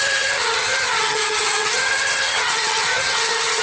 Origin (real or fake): fake